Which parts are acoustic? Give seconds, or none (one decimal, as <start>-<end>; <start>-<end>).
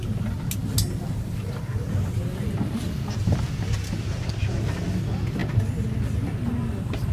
0.0-7.1